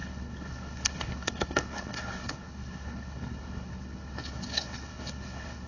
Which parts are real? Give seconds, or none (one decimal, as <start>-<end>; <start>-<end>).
none